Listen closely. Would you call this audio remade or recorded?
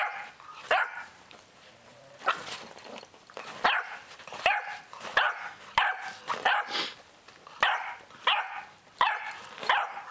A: recorded